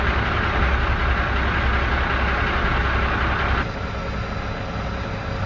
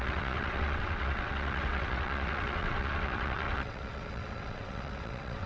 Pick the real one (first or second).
first